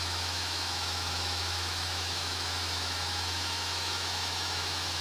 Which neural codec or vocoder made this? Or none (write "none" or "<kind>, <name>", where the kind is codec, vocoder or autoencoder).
autoencoder, DAC-VAE